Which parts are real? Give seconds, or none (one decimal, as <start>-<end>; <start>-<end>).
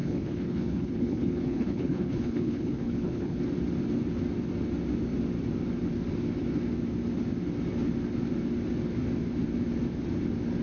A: 3.4-10.6